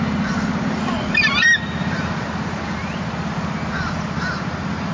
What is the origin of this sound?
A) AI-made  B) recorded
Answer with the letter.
A